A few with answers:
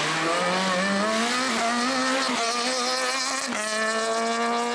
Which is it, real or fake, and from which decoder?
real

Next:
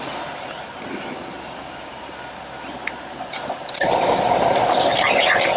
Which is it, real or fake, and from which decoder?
real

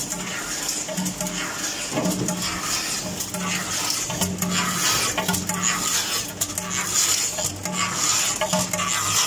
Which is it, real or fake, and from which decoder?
real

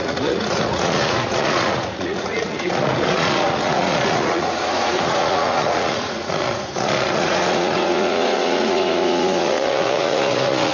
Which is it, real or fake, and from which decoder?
fake, vocoder, Vocos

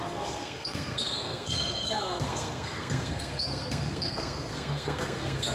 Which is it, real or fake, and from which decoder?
fake, codec, SNAC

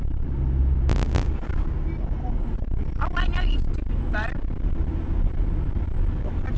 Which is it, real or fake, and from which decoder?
real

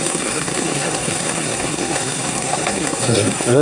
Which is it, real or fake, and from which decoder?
fake, codec, SNAC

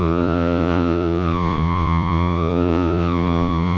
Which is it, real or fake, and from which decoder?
fake, vocoder, Vocos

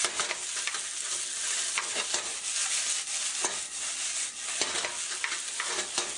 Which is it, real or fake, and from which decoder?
real